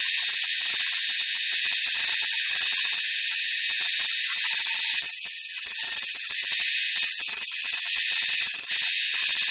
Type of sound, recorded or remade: remade